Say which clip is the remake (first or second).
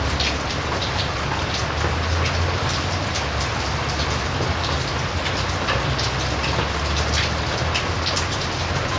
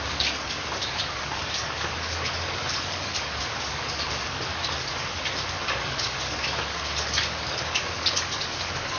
second